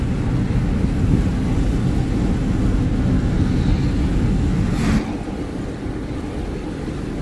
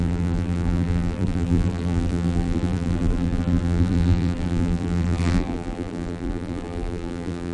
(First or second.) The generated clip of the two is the second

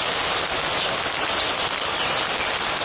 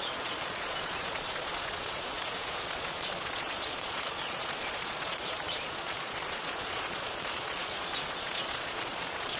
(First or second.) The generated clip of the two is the second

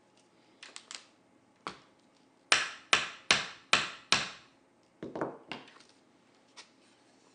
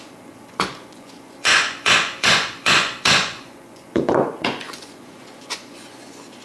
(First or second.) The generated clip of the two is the second